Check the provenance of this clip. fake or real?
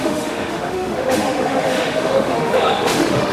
fake